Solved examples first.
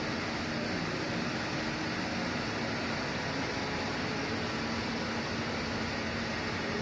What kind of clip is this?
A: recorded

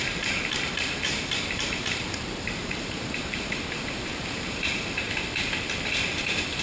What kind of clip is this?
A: remade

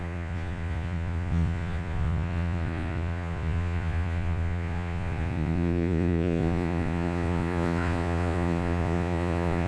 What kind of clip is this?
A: remade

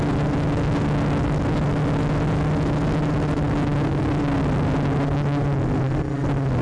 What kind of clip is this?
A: recorded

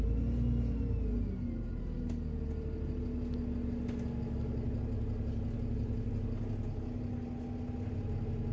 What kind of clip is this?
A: recorded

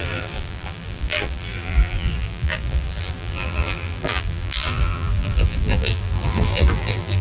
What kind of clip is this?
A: remade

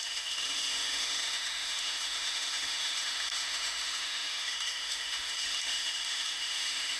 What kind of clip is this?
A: remade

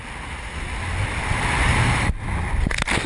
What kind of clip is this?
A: recorded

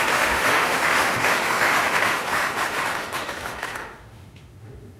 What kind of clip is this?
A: remade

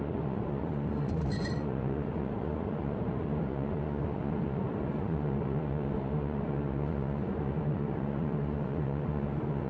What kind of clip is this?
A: remade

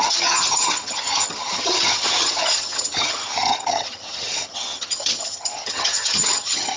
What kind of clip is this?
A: remade